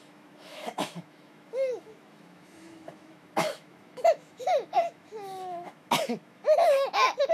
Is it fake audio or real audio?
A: fake